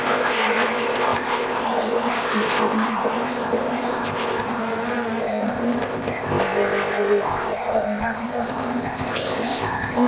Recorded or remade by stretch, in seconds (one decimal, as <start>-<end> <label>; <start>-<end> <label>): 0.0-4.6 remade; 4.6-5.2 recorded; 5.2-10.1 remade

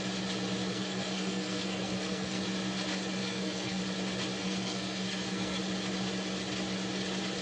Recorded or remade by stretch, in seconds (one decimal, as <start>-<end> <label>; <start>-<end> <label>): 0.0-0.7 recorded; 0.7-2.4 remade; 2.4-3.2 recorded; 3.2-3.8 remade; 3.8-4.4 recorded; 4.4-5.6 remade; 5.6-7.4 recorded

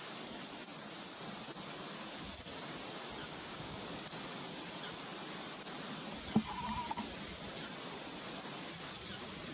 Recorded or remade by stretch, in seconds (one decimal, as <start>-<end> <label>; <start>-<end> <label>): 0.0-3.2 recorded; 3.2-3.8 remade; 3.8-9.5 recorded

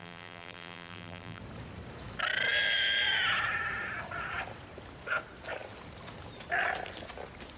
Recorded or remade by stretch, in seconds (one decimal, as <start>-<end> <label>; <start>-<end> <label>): 0.0-1.4 remade; 1.4-7.6 recorded